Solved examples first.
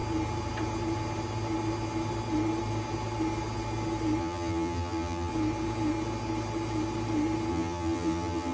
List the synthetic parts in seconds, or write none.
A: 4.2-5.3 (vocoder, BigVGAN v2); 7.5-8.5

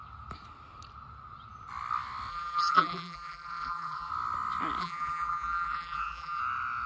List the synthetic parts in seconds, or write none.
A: 2.3-4.1 (vocoder, BigVGAN v2); 4.8-6.4

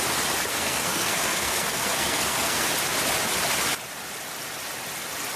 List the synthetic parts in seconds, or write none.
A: 0.5-2.7 (codec, SNAC)